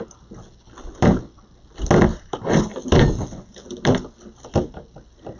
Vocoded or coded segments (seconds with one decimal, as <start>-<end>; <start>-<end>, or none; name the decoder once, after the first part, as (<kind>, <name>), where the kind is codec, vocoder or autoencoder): 2.1-2.7 (vocoder, BigVGAN v2)